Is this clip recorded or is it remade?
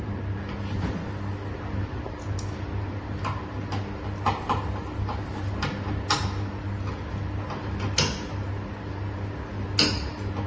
recorded